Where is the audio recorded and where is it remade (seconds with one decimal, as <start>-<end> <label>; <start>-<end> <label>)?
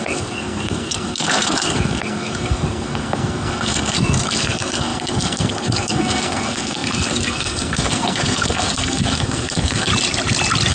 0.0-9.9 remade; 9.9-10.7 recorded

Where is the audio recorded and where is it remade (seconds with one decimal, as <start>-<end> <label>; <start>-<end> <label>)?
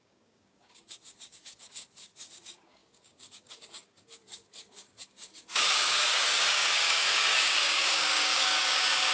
0.0-9.1 remade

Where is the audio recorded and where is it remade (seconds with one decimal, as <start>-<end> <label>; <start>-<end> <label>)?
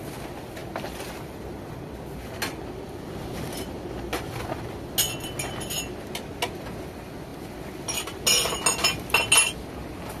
0.0-7.3 recorded; 7.3-8.2 remade; 8.2-10.2 recorded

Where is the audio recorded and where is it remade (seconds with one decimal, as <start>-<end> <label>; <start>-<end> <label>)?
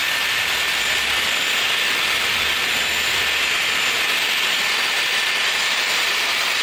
0.0-6.6 recorded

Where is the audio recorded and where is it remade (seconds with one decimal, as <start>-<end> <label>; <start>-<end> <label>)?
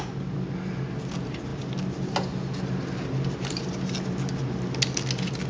0.0-5.5 recorded